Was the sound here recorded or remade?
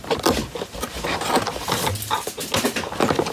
recorded